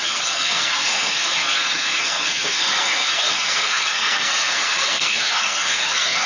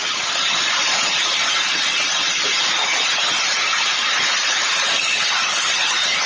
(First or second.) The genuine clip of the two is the second